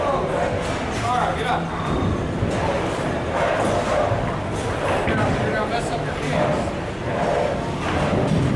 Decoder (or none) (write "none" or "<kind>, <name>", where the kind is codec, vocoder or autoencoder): none